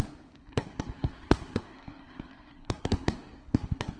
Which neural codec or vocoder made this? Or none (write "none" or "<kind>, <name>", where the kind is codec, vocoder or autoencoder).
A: codec, SNAC